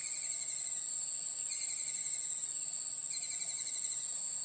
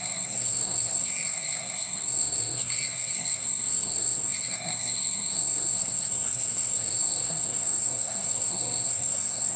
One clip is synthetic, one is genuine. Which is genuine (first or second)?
first